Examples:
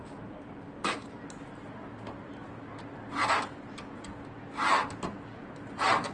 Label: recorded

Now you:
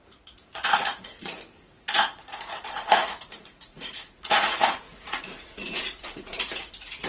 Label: remade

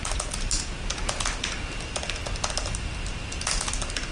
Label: recorded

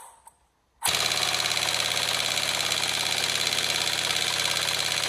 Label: recorded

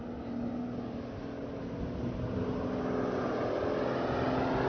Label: recorded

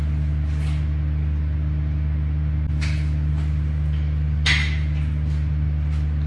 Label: recorded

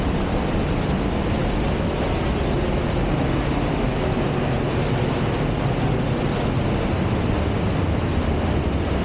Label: recorded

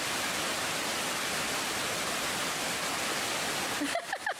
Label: recorded